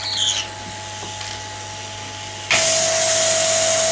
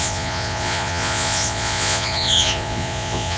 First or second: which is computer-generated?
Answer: second